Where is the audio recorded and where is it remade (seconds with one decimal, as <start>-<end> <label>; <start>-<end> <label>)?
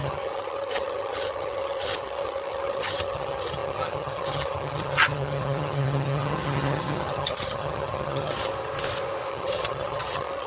0.0-8.5 remade; 8.5-9.3 recorded; 9.3-10.5 remade